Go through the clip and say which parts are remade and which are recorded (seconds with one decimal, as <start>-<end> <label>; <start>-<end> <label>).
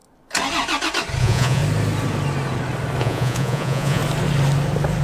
0.0-1.2 recorded; 1.2-1.6 remade; 1.6-3.0 recorded; 3.0-4.0 remade; 4.0-5.0 recorded